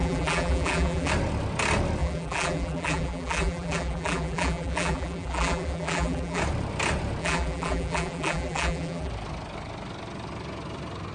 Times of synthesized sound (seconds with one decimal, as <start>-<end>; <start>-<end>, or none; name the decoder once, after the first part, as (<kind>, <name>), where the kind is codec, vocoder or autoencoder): 0.0-1.1 (vocoder, BigVGAN v2); 2.0-6.4; 7.2-9.1